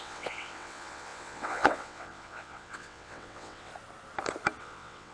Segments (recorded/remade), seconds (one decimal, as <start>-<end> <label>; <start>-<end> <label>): 0.0-3.7 remade; 3.7-4.6 recorded; 4.6-5.1 remade

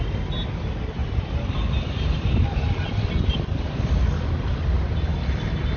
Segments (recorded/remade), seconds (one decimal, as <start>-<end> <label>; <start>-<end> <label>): 0.0-5.8 recorded

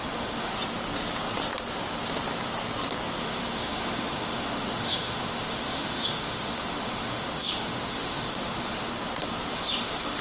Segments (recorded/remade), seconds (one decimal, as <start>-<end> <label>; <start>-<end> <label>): 0.0-0.5 remade; 0.5-3.2 recorded; 3.2-8.9 remade; 8.9-9.5 recorded; 9.5-10.2 remade

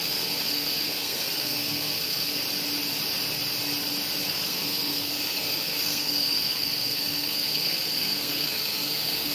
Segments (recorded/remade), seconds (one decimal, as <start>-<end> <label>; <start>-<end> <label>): 0.0-2.4 remade; 2.4-4.2 recorded; 4.2-9.3 remade

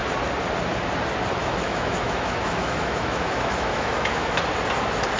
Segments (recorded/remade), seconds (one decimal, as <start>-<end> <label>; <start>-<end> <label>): 0.0-1.4 recorded; 1.4-4.4 remade; 4.4-5.2 recorded

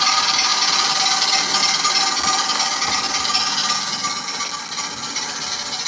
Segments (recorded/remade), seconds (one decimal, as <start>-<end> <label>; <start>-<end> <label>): 0.0-5.9 recorded

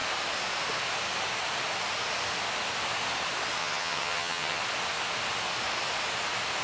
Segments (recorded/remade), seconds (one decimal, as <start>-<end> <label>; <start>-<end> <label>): 0.0-3.6 recorded; 3.6-4.6 remade; 4.6-6.6 recorded

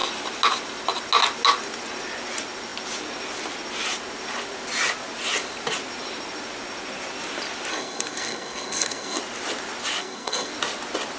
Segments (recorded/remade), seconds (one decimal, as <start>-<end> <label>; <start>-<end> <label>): 0.0-7.7 recorded; 7.7-9.2 remade; 9.2-10.0 recorded; 10.0-10.5 remade; 10.5-11.2 recorded